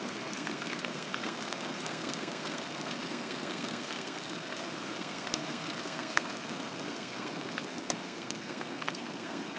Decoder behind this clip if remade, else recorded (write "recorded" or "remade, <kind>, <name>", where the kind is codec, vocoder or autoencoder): remade, codec, SNAC